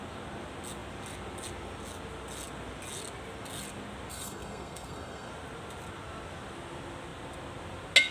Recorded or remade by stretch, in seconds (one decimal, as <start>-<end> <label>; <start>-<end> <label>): 0.0-4.1 recorded; 4.1-5.3 remade; 5.3-8.1 recorded